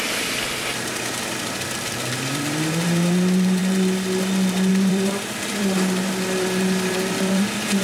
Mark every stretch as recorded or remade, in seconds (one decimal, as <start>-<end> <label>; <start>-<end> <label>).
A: 0.0-3.6 remade; 3.6-4.7 recorded; 4.7-7.8 remade